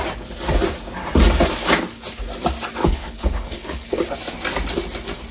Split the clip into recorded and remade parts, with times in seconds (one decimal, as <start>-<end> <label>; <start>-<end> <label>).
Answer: 0.0-2.8 recorded; 2.8-4.0 remade; 4.0-5.3 recorded